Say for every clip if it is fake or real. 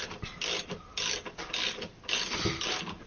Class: real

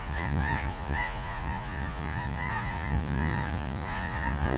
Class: fake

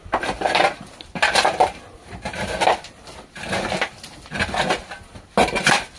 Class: real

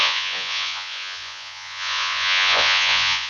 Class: fake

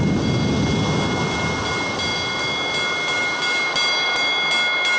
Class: real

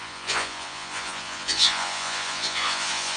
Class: fake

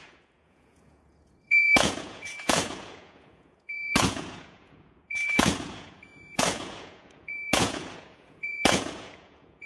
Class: fake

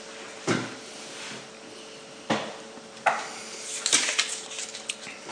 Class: real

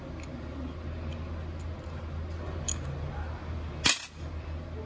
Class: real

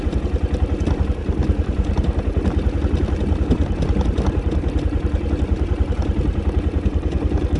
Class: real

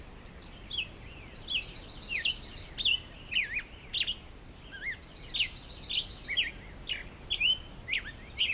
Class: real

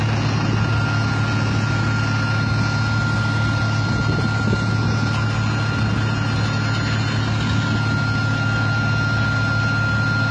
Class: real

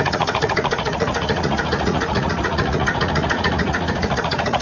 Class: fake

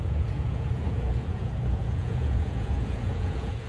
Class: fake